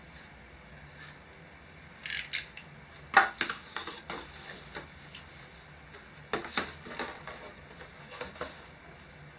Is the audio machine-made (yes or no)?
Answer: no